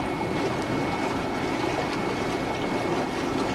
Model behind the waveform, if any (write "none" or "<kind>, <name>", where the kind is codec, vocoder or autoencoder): none